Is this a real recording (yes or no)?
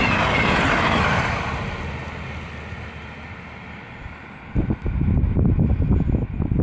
yes